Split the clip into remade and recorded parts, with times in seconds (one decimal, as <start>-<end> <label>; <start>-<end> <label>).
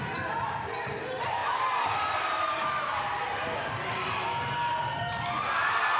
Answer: 0.0-6.0 recorded